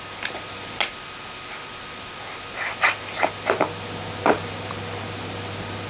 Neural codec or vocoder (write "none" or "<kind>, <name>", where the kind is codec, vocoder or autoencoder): none